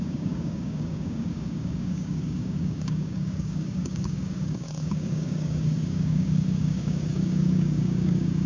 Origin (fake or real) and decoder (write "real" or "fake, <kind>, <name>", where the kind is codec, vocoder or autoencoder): fake, codec, DAC